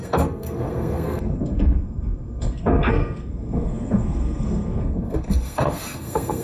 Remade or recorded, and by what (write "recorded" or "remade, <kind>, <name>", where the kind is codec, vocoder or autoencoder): remade, codec, SNAC